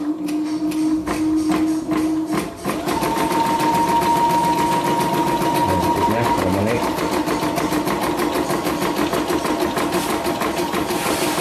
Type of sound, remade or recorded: recorded